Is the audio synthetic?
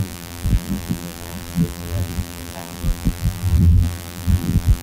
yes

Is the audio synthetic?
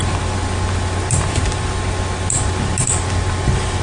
no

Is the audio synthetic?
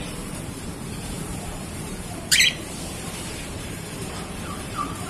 yes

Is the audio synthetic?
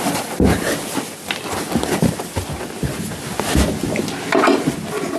no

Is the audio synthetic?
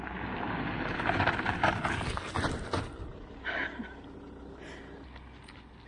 no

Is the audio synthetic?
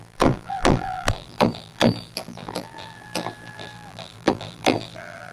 yes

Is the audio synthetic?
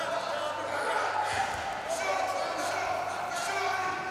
no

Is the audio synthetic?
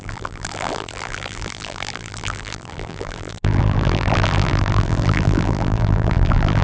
yes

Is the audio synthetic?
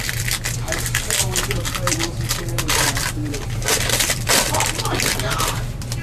yes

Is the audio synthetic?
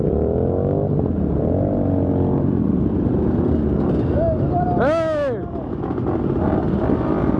no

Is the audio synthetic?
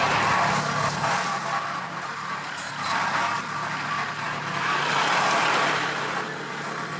no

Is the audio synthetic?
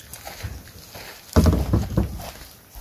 no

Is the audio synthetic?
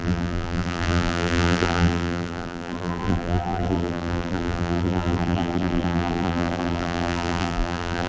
yes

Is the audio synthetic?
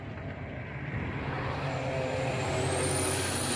no